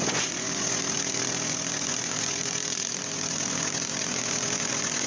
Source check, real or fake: fake